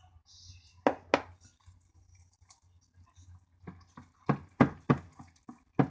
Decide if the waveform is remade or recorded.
recorded